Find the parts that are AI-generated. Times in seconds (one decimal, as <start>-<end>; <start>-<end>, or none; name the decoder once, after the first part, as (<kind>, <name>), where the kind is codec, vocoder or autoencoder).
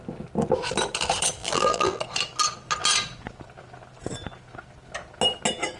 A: 1.4-2.0 (vocoder, BigVGAN v2)